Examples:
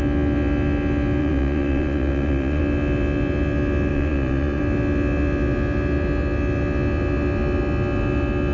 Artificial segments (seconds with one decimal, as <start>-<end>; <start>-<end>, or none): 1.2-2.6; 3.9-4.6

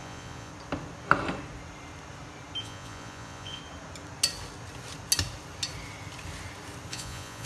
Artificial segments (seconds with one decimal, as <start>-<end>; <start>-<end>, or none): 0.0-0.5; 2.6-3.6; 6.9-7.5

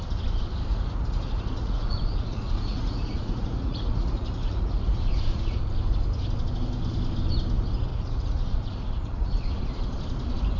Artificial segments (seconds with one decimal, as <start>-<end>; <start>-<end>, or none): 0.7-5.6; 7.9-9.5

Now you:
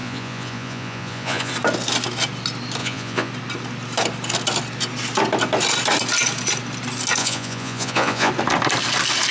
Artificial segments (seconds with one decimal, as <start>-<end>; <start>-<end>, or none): 0.0-1.5; 2.8-3.3; 7.2-8.3

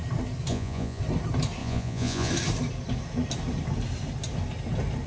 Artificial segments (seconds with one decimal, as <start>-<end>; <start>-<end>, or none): 0.5-1.0; 1.6-2.3